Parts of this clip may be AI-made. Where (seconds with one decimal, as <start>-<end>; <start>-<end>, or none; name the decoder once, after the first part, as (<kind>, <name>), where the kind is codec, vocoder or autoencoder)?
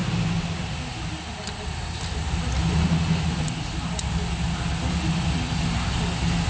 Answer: none